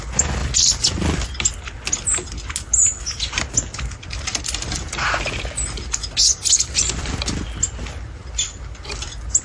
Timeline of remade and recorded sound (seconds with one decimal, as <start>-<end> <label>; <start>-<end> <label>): 0.0-9.4 recorded